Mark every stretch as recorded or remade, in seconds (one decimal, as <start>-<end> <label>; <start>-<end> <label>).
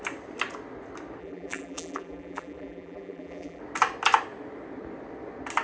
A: 0.0-1.2 recorded; 1.2-3.6 remade; 3.6-5.6 recorded